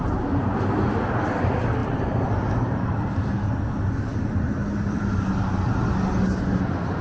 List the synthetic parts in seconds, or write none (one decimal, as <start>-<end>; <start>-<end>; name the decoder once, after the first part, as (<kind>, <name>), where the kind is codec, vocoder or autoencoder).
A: 1.8-2.9 (vocoder, BigVGAN v2); 4.1-5.0